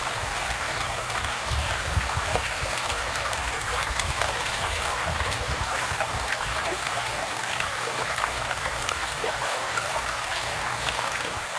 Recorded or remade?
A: remade